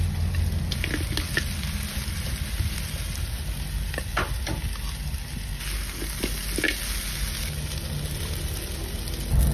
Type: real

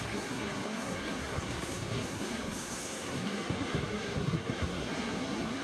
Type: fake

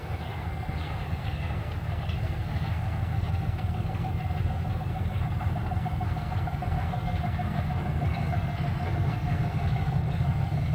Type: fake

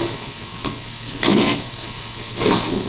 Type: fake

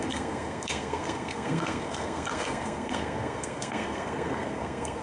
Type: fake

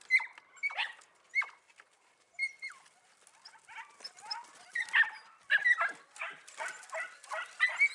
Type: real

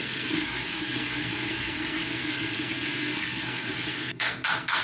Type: fake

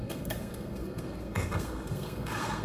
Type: fake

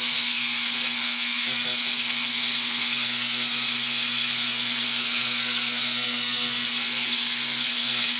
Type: fake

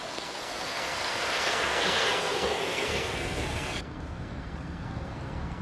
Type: fake